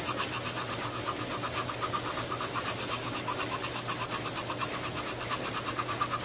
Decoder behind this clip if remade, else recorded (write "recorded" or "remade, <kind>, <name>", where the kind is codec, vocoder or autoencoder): recorded